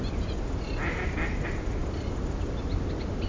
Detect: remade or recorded recorded